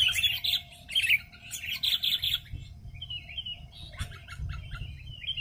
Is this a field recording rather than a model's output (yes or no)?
yes